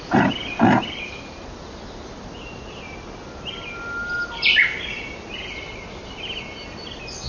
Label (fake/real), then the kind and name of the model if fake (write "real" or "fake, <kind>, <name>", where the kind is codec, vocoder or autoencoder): real